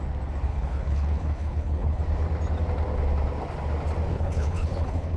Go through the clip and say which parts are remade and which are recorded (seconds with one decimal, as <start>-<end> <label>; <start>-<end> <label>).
0.0-0.5 recorded; 0.5-2.0 remade; 2.0-4.1 recorded; 4.1-5.2 remade